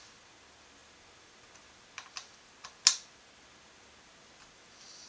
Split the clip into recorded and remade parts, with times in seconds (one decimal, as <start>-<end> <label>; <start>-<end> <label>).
0.0-5.1 recorded